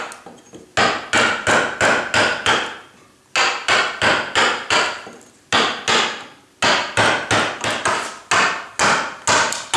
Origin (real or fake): real